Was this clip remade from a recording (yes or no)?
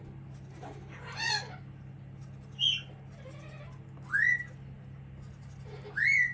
no